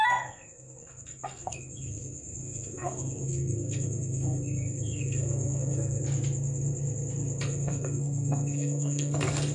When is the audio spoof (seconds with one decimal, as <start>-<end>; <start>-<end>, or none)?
0.0-6.0; 7.4-9.5